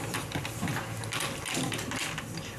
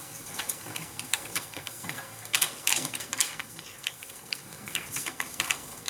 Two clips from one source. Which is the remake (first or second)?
second